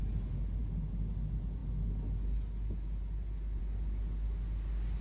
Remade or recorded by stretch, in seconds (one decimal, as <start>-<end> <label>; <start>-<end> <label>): 0.0-5.0 recorded